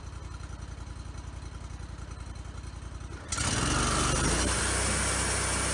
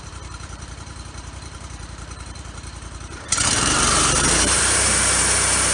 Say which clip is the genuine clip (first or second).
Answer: first